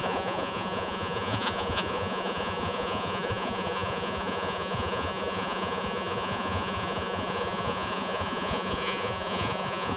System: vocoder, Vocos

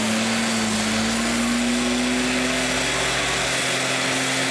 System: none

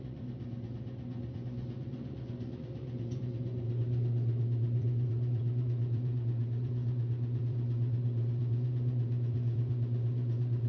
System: vocoder, Vocos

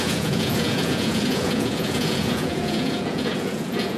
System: vocoder, Vocos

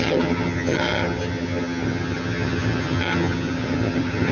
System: vocoder, HiFi-GAN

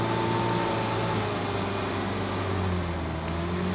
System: none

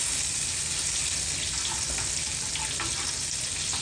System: none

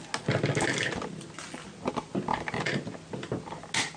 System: none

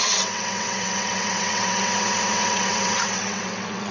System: vocoder, WaveNeXt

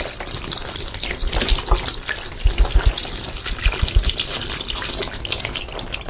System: none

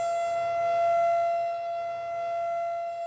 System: none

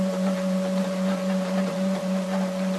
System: vocoder, Vocos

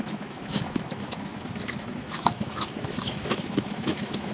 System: autoencoder, DAC-VAE